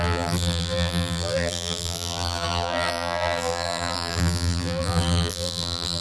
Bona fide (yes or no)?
no